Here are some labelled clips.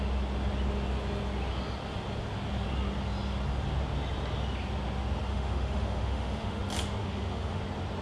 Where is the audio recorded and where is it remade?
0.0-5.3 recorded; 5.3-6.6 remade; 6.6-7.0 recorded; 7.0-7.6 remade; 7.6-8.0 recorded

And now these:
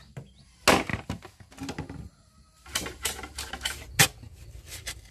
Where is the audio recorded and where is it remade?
0.0-5.1 recorded

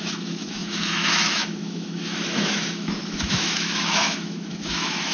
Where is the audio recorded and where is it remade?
0.0-5.1 remade

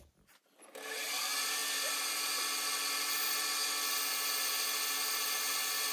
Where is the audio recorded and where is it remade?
0.0-5.9 recorded

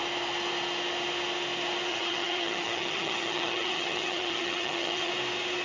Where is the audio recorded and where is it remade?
0.0-1.9 recorded; 1.9-5.1 remade; 5.1-5.6 recorded

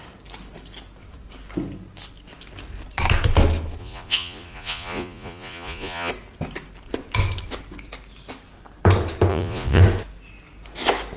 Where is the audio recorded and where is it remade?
0.0-3.8 recorded; 3.8-6.1 remade; 6.1-9.3 recorded; 9.3-9.8 remade; 9.8-11.2 recorded